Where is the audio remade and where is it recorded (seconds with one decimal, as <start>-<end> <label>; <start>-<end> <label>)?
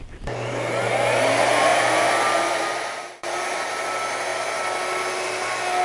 0.0-1.7 recorded; 1.7-3.3 remade; 3.3-5.8 recorded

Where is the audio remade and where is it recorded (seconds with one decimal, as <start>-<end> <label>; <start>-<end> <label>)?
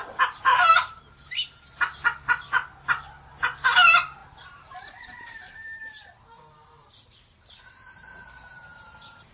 0.0-0.5 recorded; 0.5-1.0 remade; 1.0-4.2 recorded; 4.2-6.9 remade; 6.9-9.3 recorded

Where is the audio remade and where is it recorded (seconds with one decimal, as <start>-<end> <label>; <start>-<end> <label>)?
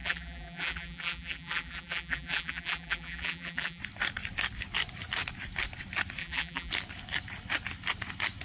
0.0-3.8 remade; 3.8-6.2 recorded; 6.2-6.7 remade; 6.7-8.4 recorded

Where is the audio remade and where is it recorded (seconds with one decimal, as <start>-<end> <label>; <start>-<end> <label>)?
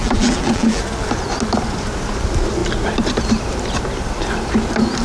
0.0-0.8 remade; 0.8-5.0 recorded